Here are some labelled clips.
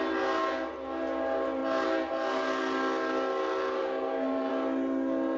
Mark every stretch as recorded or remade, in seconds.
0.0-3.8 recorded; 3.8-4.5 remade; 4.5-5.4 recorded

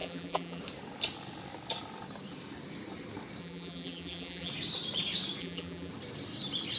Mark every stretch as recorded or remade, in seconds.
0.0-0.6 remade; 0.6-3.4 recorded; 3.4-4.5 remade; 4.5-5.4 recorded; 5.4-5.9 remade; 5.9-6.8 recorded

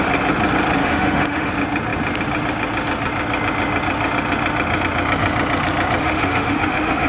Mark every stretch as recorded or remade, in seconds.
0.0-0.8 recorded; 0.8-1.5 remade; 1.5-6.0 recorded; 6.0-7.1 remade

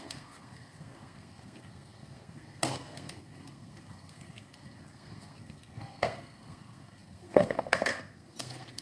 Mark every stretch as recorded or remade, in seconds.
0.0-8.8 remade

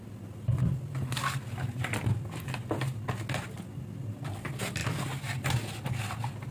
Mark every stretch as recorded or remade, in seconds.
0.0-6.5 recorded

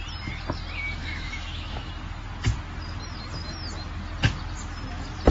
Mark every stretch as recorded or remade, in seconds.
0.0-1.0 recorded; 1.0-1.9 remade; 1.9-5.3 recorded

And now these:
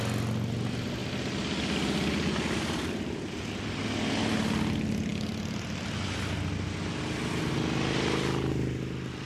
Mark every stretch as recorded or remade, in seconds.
0.0-9.3 recorded